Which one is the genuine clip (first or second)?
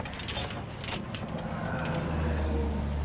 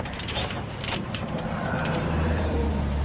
first